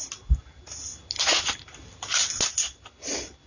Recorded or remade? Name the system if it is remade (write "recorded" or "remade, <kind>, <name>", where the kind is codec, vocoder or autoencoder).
recorded